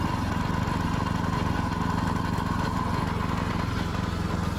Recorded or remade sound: recorded